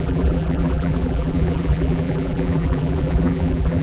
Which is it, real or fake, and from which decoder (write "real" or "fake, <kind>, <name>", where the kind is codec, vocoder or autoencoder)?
fake, vocoder, BigVGAN v2